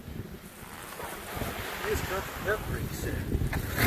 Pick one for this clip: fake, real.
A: real